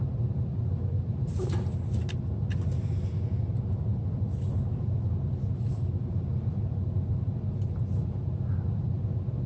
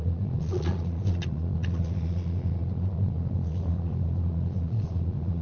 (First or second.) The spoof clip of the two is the second